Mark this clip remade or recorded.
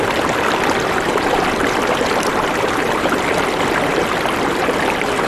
recorded